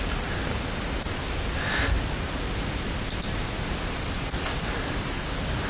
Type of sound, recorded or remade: recorded